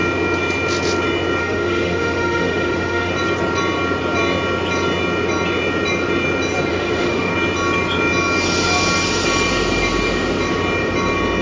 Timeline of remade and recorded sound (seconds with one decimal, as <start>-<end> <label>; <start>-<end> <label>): 0.0-1.4 recorded; 1.4-3.1 remade; 3.1-6.7 recorded; 6.7-7.3 remade; 7.3-11.4 recorded